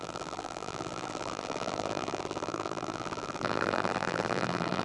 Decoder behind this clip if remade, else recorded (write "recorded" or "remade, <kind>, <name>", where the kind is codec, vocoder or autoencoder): remade, vocoder, BigVGAN v2